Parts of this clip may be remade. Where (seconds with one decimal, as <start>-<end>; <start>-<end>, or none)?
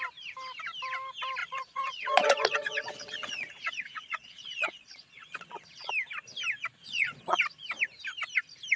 1.4-5.9; 6.8-7.4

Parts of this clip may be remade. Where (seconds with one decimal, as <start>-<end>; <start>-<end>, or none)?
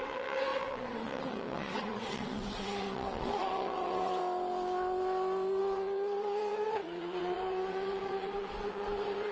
0.0-4.2; 5.6-9.3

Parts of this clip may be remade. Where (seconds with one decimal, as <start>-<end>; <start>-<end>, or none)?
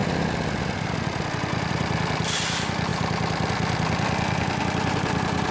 1.7-2.9; 4.6-5.5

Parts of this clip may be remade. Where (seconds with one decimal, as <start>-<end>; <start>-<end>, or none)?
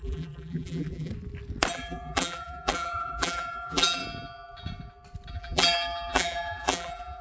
0.0-1.1; 1.7-4.0; 5.3-7.2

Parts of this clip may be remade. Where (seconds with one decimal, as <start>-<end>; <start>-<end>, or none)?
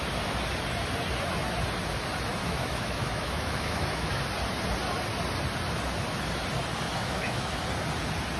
2.4-4.2; 7.0-7.6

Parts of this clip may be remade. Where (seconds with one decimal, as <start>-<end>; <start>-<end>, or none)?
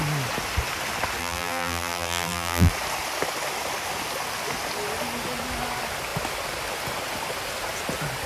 1.2-2.7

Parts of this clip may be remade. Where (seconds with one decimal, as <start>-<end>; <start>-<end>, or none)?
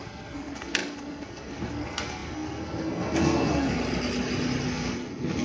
0.0-3.8; 4.7-5.4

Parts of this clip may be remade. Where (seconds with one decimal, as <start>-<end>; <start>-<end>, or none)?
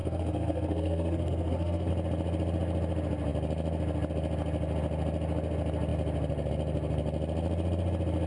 0.0-1.9